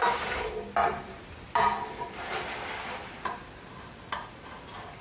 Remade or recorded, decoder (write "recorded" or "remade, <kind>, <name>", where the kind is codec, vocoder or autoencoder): remade, vocoder, BigVGAN v2